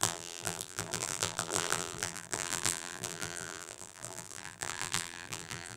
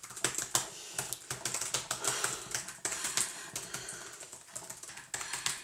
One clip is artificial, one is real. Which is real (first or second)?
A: second